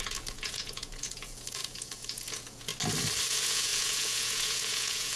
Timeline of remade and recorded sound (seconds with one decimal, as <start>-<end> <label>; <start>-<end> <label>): 0.0-2.7 remade; 2.7-3.3 recorded; 3.3-5.2 remade